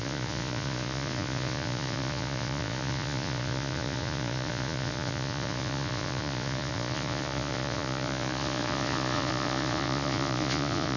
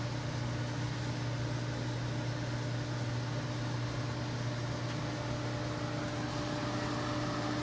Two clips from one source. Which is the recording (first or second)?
second